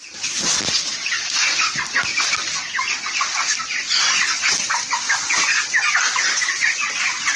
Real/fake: real